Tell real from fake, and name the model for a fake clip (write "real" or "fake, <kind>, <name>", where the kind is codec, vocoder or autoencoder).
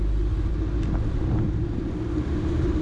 real